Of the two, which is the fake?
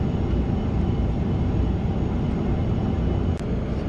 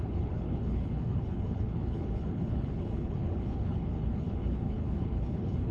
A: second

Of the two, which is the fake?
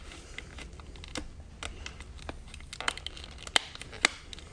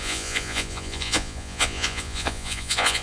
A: second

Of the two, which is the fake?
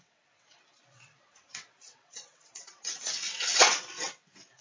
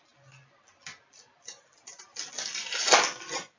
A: first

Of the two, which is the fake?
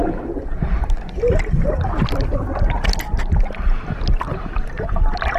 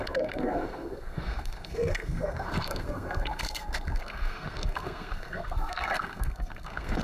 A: second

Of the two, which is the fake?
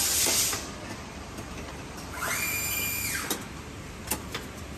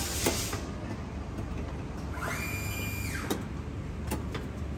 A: first